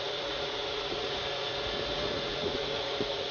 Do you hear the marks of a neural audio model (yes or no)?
yes